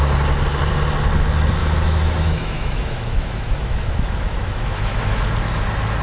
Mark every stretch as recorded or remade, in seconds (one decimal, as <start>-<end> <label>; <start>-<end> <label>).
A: 0.0-1.6 recorded; 1.6-5.2 remade; 5.2-6.0 recorded